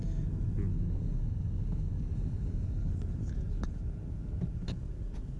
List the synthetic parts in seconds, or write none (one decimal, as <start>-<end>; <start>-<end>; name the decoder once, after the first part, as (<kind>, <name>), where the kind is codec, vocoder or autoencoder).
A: 0.7-2.9 (codec, DAC)